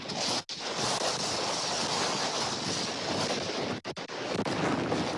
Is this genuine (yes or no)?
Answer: yes